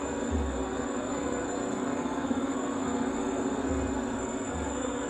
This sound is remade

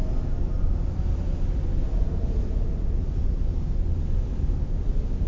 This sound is recorded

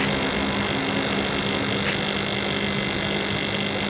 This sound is recorded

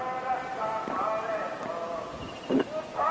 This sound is recorded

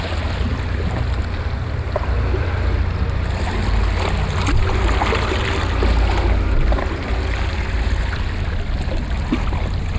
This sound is recorded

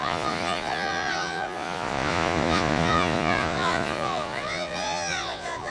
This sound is remade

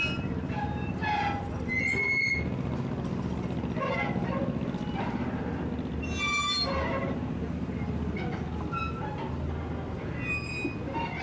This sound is recorded